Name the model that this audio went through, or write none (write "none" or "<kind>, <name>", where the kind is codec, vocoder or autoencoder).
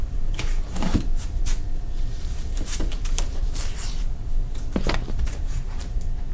vocoder, BigVGAN v2